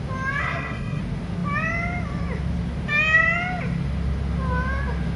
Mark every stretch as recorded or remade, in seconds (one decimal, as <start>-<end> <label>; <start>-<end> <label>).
0.0-0.4 recorded; 0.4-1.0 remade; 1.0-5.2 recorded